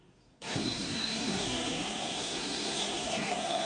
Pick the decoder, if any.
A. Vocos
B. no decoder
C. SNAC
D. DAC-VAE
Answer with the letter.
C